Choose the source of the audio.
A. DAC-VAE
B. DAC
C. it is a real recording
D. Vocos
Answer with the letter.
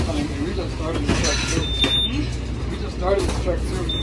C